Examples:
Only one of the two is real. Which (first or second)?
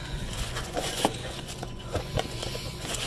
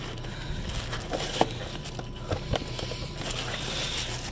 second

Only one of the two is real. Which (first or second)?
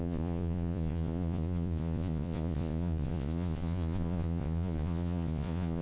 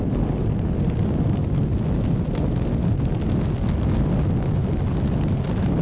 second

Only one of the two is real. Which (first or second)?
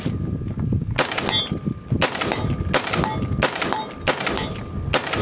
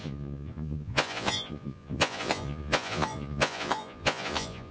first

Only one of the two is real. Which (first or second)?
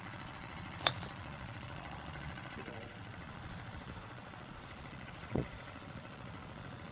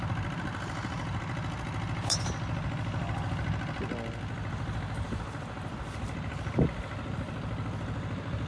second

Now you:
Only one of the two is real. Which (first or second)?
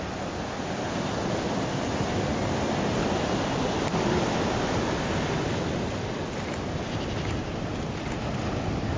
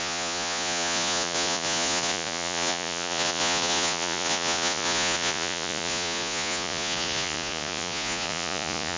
first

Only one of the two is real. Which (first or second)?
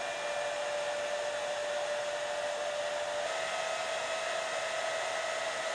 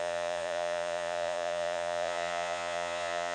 first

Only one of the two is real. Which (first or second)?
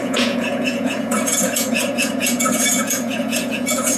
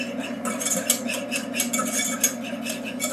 second